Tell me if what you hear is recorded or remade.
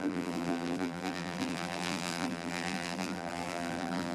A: remade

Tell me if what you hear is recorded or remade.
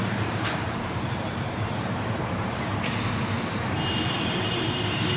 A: remade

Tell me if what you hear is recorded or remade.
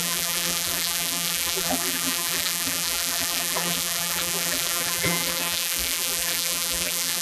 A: remade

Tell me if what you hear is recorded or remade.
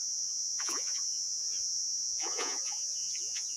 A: remade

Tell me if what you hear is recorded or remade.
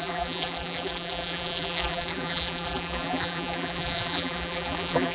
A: remade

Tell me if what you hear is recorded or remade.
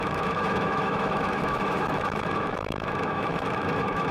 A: remade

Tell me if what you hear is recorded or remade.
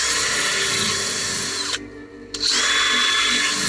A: recorded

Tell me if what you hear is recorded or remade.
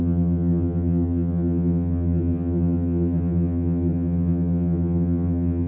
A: remade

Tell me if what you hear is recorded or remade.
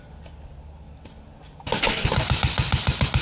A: recorded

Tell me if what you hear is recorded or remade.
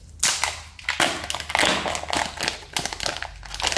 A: recorded